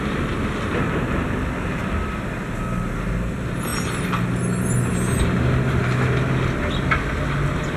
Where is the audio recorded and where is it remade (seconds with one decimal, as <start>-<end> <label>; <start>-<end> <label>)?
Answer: 0.0-7.8 recorded